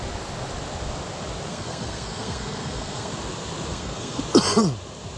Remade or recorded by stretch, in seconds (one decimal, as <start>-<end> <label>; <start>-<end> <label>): 0.0-1.5 recorded; 1.5-3.1 remade; 3.1-3.7 recorded; 3.7-4.2 remade; 4.2-5.2 recorded